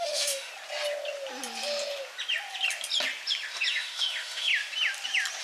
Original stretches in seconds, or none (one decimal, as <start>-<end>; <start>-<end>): 0.5-3.7; 4.5-5.4